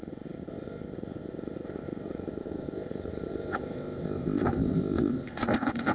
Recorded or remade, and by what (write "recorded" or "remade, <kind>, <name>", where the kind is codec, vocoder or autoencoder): remade, codec, ZipCodec